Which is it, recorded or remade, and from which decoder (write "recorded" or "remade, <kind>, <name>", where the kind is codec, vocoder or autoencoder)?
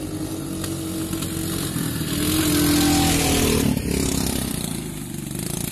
recorded